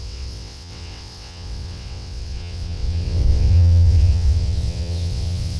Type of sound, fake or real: fake